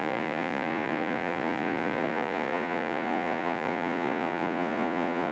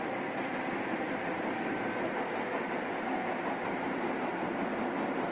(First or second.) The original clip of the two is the second